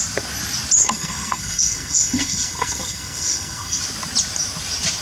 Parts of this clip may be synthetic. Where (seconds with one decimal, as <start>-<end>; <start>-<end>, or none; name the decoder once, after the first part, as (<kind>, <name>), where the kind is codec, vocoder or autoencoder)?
0.8-3.8 (codec, SNAC)